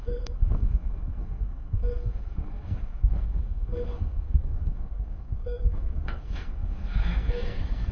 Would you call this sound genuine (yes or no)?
no